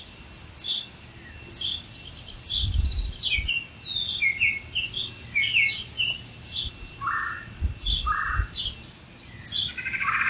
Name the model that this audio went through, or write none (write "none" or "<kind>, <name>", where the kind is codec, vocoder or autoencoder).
none